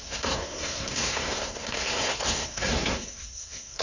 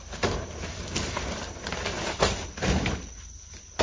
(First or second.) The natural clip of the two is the second